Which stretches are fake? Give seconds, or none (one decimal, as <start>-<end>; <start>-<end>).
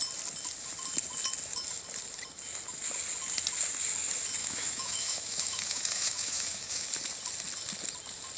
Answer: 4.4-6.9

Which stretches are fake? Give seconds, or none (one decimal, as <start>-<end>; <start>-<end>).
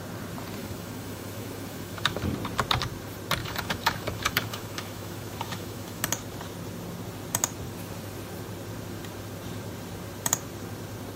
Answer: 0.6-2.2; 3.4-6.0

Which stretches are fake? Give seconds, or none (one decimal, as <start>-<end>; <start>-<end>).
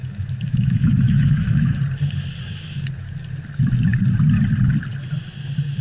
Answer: 0.0-1.8